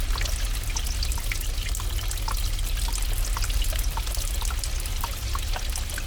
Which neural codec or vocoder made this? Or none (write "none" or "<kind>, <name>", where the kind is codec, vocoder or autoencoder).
none